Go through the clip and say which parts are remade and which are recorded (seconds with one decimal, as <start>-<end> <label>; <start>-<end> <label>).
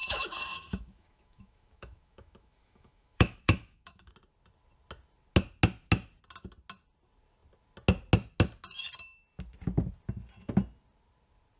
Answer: 0.0-4.1 remade; 4.1-11.6 recorded